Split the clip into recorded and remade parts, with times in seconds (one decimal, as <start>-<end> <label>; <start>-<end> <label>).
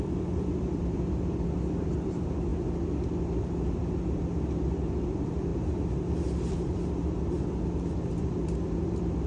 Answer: 0.0-2.5 remade; 2.5-3.7 recorded; 3.7-9.3 remade